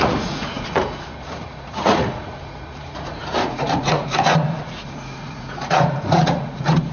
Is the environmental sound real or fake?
fake